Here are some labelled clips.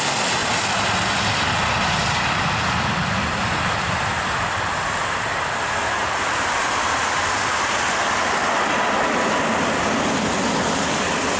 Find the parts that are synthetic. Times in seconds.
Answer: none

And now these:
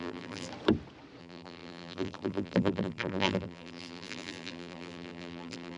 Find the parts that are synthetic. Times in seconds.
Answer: 0.0-0.5 (vocoder, BigVGAN v2); 1.2-5.8

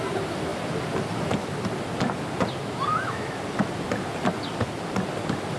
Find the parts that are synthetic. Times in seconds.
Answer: 2.9-3.4 (autoencoder, DAC-VAE)

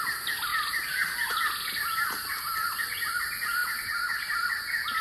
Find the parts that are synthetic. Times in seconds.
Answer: none

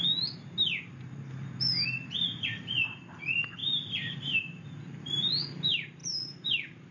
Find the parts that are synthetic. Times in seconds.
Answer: 3.6-5.3 (vocoder, BigVGAN v2); 6.0-6.9

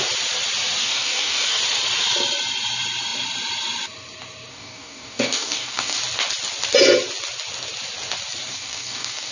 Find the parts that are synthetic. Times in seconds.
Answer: 0.8-1.6 (codec, DAC); 4.5-6.0; 8.5-9.3

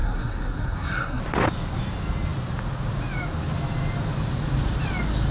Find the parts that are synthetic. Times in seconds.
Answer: 0.0-1.2 (codec, SNAC)